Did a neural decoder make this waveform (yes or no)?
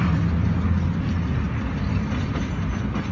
no